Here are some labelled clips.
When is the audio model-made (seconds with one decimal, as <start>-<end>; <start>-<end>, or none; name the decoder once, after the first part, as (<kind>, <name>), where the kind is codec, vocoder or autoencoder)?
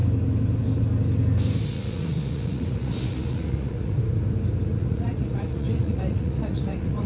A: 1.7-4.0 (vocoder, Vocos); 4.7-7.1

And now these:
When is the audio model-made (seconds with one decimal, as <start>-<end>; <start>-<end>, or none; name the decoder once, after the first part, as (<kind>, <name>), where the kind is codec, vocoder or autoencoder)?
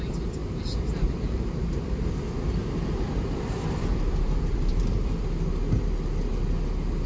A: 0.4-2.0 (vocoder, BigVGAN v2); 2.6-5.2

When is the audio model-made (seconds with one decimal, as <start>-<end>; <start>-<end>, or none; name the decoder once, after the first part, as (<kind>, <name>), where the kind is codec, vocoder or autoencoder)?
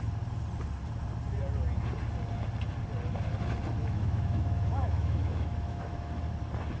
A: 3.8-6.2 (autoencoder, DAC-VAE)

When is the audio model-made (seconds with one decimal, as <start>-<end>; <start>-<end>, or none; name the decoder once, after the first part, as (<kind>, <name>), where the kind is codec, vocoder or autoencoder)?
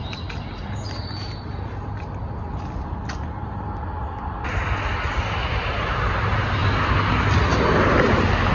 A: none